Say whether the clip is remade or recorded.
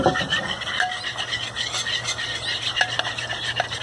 recorded